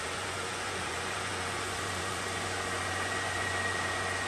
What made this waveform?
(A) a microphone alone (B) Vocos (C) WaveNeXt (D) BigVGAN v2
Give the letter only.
B